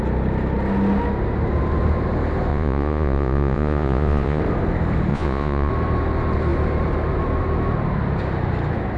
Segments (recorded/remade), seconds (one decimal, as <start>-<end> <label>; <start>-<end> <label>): 0.0-2.5 recorded; 2.5-4.4 remade; 4.4-5.1 recorded; 5.1-5.7 remade; 5.7-9.0 recorded